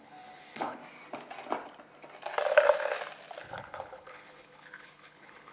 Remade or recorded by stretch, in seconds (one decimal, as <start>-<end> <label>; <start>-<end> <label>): 0.0-0.8 remade; 0.8-3.4 recorded; 3.4-5.5 remade